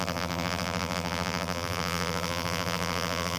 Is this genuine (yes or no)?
no